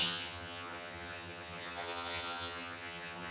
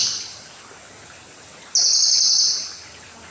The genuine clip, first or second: second